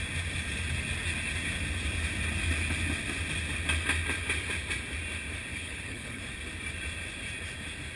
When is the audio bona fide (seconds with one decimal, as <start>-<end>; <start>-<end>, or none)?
0.0-5.5; 6.2-8.0

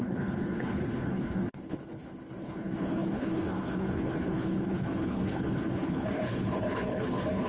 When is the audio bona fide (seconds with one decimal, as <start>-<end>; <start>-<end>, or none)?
none